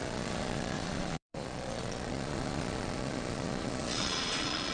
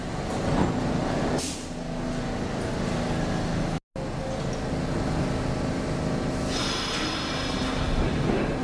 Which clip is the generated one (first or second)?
first